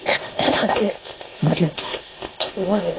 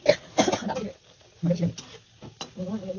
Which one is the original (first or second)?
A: second